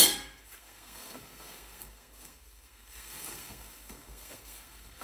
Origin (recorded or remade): remade